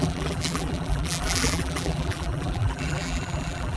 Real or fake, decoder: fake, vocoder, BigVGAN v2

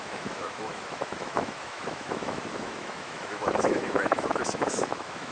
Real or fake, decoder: fake, autoencoder, DAC-VAE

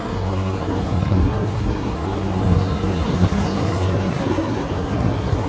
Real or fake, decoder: fake, codec, SNAC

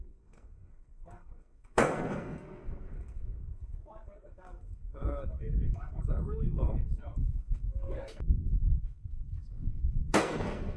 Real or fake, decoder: fake, codec, SNAC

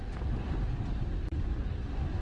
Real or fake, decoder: real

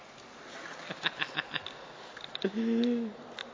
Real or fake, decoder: real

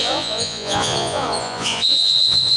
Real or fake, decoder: fake, vocoder, Vocos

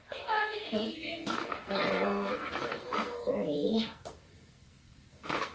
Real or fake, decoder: fake, codec, SNAC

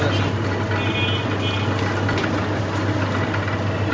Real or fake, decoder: real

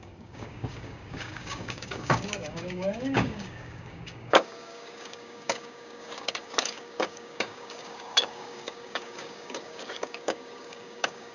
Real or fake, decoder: fake, codec, DAC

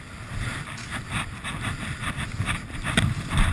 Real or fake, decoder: real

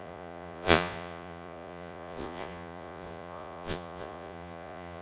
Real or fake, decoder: fake, vocoder, Vocos